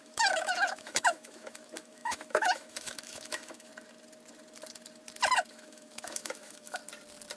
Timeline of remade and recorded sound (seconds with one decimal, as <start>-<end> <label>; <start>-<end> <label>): 0.0-3.7 remade; 3.7-5.5 recorded; 5.5-6.8 remade; 6.8-7.4 recorded